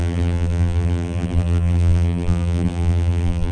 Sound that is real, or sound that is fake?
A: fake